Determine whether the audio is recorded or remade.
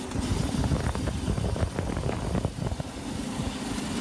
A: recorded